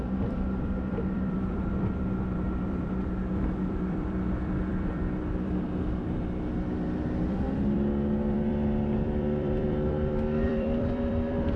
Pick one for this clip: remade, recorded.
remade